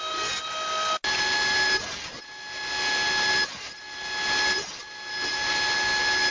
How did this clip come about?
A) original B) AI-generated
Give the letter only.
A